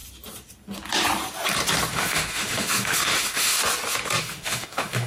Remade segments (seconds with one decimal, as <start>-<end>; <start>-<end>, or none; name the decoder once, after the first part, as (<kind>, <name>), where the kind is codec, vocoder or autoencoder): 1.9-3.6 (autoencoder, DAC-VAE); 4.2-5.1